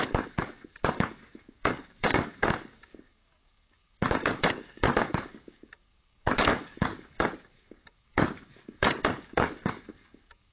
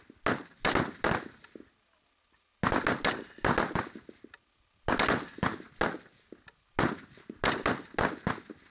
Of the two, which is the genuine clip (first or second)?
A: second